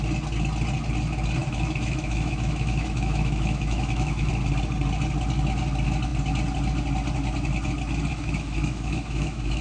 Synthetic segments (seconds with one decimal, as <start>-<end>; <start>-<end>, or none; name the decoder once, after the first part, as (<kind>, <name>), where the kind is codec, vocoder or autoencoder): 1.4-4.3 (autoencoder, DAC-VAE); 8.1-9.6